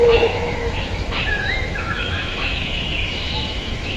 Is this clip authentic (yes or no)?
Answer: no